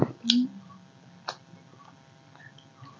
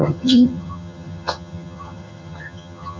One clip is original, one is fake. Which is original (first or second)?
first